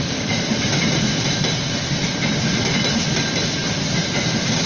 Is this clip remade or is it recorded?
recorded